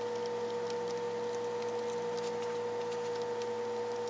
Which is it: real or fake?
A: real